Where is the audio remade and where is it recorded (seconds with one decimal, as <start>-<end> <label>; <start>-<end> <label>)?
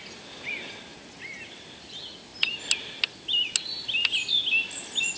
0.0-5.2 recorded